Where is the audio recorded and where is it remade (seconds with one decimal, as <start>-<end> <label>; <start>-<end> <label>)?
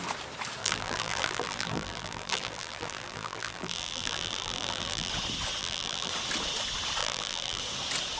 0.0-0.6 recorded; 0.6-5.1 remade; 5.1-5.6 recorded; 5.6-6.1 remade; 6.1-7.0 recorded; 7.0-7.6 remade; 7.6-8.2 recorded